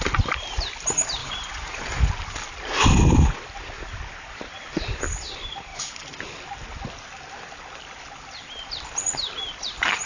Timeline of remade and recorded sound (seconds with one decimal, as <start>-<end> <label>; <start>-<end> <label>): 0.0-1.2 recorded; 1.2-2.1 remade; 2.1-10.1 recorded